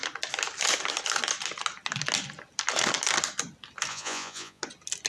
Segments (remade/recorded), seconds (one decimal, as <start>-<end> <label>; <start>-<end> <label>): 0.0-3.9 recorded; 3.9-4.6 remade; 4.6-5.1 recorded